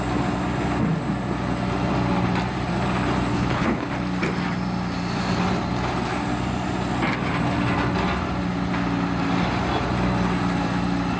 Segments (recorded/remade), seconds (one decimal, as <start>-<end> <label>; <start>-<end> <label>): 0.0-3.3 recorded; 3.3-3.9 remade; 3.9-11.2 recorded